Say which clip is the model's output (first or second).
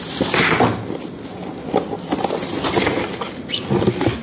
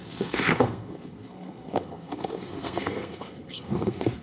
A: second